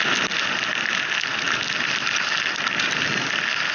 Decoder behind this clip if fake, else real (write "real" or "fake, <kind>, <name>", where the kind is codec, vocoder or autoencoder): real